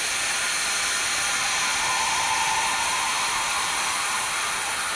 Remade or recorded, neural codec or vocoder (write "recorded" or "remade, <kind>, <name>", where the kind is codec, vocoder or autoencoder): recorded